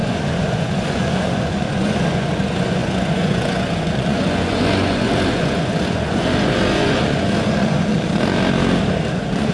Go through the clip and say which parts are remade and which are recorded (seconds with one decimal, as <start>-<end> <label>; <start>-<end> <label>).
0.0-7.9 remade; 7.9-9.1 recorded; 9.1-9.5 remade